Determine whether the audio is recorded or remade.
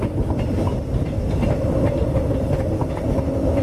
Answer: recorded